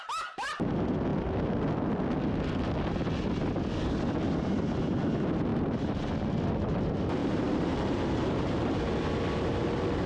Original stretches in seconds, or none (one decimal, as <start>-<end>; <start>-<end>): 0.0-5.5; 6.1-7.2; 8.7-10.1